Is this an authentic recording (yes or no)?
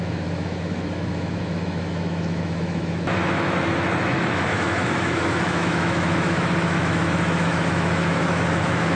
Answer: no